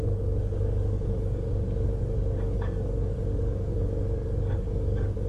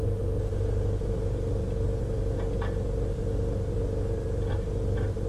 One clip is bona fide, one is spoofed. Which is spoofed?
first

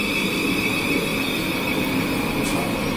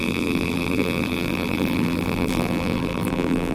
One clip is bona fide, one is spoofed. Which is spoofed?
second